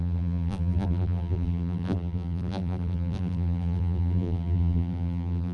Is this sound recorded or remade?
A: remade